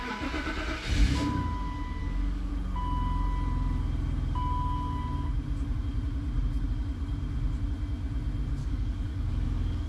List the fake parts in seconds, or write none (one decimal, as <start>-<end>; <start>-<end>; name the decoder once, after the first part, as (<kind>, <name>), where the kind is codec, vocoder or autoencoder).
2.0-2.5 (codec, DAC); 8.6-9.9